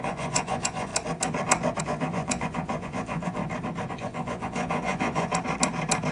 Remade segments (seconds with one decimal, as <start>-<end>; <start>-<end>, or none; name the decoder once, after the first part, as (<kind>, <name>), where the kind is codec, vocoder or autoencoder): 0.0-0.9 (vocoder, Vocos); 1.8-3.4; 3.9-5.3